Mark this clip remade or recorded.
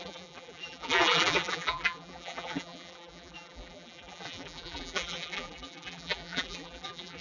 remade